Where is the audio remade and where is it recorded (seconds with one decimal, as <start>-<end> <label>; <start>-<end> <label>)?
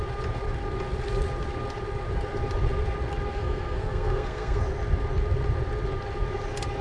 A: 0.0-3.3 recorded; 3.3-4.6 remade; 4.6-6.8 recorded